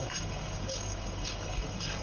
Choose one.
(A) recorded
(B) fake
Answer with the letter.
B